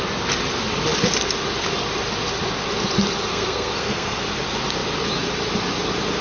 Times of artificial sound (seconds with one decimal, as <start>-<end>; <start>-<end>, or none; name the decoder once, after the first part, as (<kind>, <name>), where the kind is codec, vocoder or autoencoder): 3.3-4.2 (codec, SNAC)